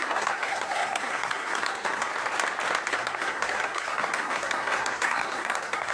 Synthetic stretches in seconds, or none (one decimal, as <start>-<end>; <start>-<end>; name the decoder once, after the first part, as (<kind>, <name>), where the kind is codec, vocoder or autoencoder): 0.0-2.1 (codec, SNAC); 2.9-5.9